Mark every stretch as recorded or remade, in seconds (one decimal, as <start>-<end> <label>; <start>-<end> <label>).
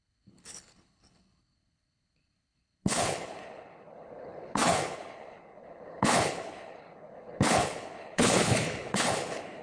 0.0-9.6 remade